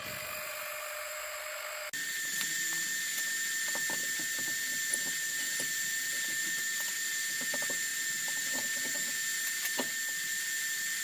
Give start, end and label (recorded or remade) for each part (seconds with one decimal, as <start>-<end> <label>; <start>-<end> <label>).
0.0-11.0 recorded